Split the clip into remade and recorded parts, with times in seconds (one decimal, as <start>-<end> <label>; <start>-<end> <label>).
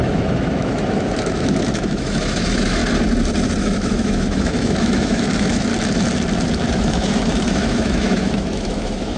0.0-2.8 remade; 2.8-3.6 recorded; 3.6-5.7 remade; 5.7-6.7 recorded; 6.7-9.2 remade